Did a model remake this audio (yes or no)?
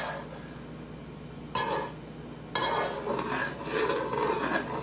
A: no